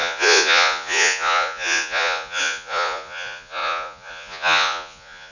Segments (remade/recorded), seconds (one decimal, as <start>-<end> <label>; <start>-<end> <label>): 0.0-5.3 remade